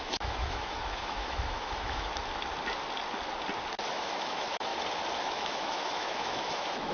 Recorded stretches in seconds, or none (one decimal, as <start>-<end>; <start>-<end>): 2.1-3.9; 4.7-5.2